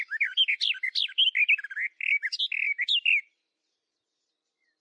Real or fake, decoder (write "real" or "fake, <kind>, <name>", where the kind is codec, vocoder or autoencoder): real